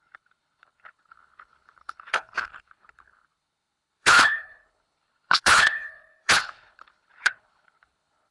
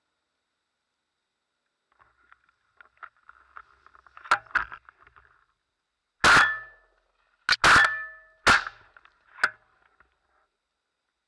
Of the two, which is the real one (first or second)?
second